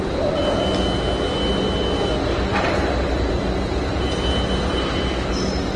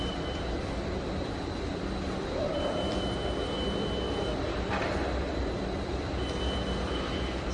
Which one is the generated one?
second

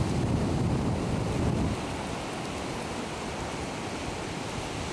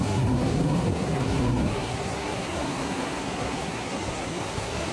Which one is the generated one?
second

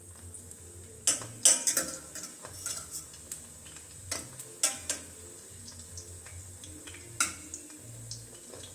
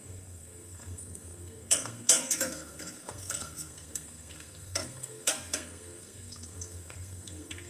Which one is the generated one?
second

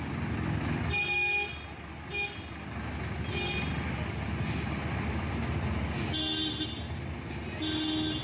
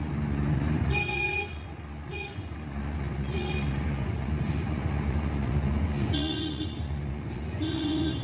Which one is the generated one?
second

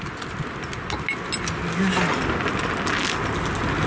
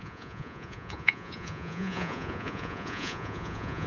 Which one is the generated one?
second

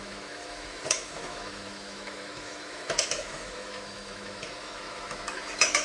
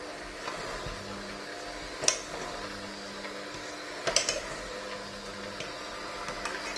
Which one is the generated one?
first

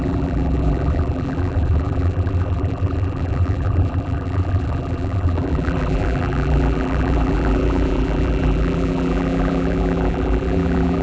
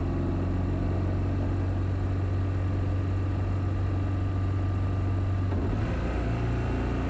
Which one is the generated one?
first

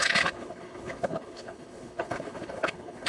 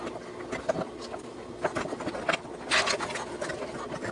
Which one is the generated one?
first